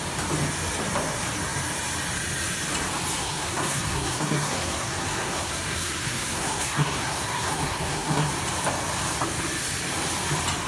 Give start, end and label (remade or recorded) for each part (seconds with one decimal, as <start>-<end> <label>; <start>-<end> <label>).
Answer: 0.0-3.2 recorded; 3.2-8.3 remade; 8.3-10.7 recorded